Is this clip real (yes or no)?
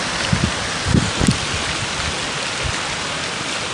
yes